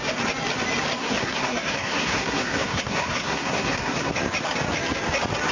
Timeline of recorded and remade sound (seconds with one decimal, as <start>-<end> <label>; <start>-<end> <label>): 0.0-1.0 recorded; 1.0-4.1 remade; 4.1-5.5 recorded